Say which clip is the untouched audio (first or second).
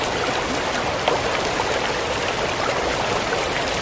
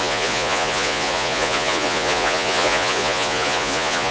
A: first